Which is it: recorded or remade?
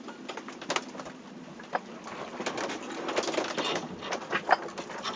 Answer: recorded